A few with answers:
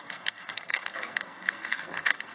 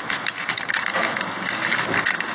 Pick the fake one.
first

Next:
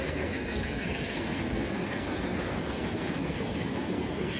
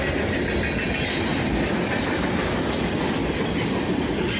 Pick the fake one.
first